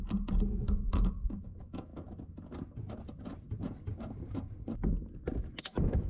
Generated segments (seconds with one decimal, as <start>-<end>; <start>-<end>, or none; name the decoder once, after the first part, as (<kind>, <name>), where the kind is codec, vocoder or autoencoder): 0.5-1.9 (autoencoder, DAC-VAE); 5.6-6.1